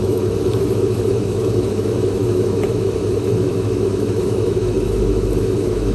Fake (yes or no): yes